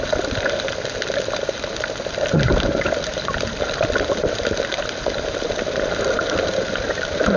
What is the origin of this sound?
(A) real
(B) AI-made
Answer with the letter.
B